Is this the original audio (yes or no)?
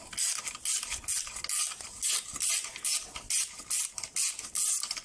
yes